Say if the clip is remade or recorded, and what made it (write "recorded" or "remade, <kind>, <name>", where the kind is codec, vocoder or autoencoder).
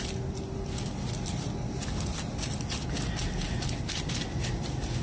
recorded